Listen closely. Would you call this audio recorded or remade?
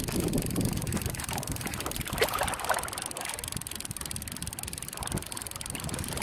recorded